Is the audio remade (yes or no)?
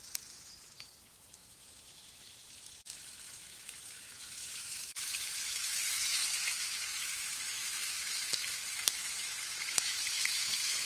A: yes